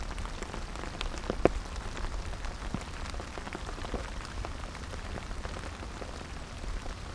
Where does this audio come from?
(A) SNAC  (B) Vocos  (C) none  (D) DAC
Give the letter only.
C